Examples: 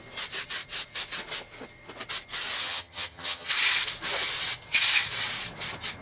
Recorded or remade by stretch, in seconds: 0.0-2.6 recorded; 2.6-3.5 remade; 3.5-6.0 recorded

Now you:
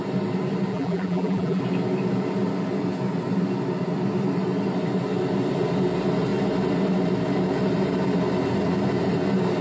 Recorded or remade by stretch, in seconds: 0.0-0.7 recorded; 0.7-1.6 remade; 1.6-9.6 recorded

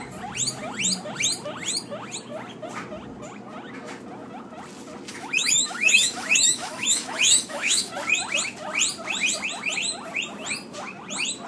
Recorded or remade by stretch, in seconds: 0.0-5.1 recorded; 5.1-7.9 remade; 7.9-11.5 recorded

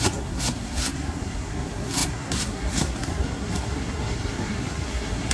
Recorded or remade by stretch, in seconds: 0.0-5.3 remade

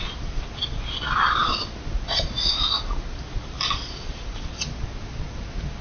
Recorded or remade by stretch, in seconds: 0.0-5.8 recorded

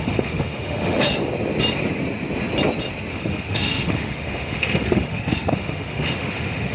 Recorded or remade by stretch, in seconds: 0.0-1.2 remade; 1.2-3.1 recorded; 3.1-6.7 remade

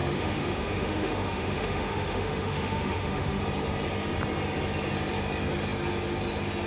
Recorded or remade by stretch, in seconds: 0.0-3.4 remade; 3.4-6.7 recorded

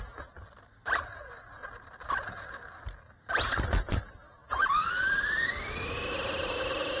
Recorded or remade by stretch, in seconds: 0.0-0.7 remade; 0.7-1.2 recorded; 1.2-1.6 remade; 1.6-3.6 recorded; 3.6-7.0 remade